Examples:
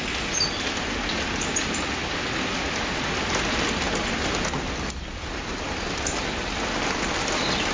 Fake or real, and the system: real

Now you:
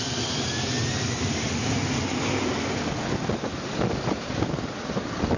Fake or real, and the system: real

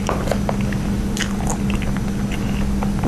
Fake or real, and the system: real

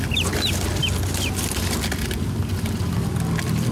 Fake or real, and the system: real